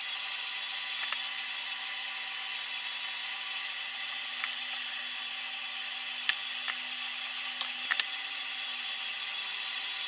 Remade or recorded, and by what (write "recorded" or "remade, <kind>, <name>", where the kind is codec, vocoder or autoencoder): recorded